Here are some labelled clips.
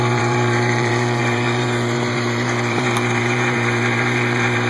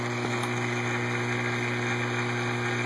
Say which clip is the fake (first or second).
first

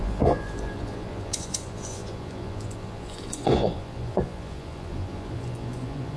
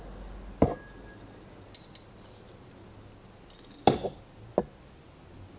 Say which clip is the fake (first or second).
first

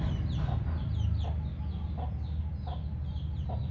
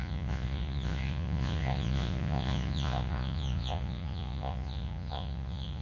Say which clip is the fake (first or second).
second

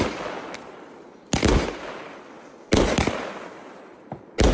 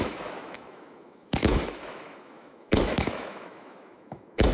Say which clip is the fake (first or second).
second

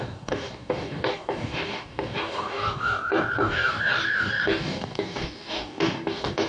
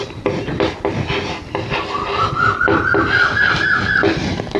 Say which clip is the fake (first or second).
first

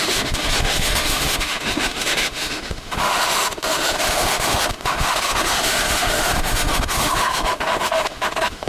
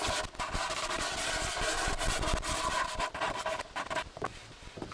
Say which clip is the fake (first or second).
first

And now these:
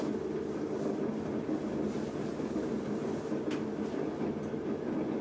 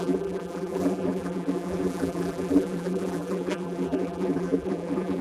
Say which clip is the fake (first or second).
second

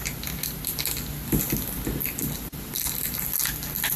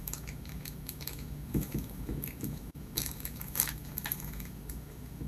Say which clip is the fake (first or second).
second